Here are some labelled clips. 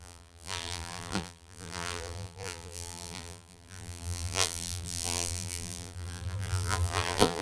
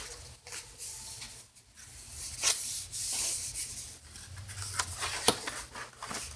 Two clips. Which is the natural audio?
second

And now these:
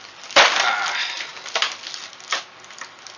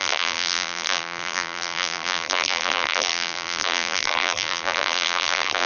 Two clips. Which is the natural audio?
first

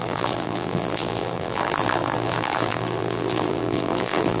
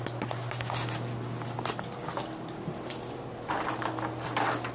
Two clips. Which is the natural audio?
second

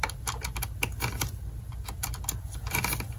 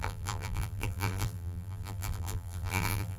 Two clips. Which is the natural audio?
first